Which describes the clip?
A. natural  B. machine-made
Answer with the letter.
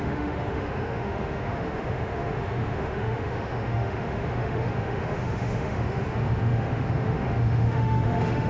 B